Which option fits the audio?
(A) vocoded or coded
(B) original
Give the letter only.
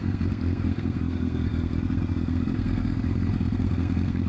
A